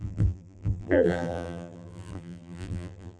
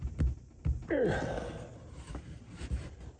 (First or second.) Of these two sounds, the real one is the second